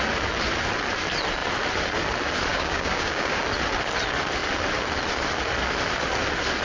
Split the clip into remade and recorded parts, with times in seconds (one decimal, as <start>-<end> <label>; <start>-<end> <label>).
0.0-2.5 recorded; 2.5-3.4 remade; 3.4-6.6 recorded